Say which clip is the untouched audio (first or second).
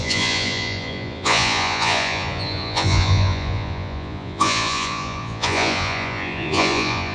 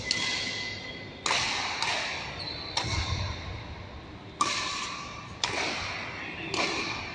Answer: second